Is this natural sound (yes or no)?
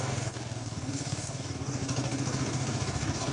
no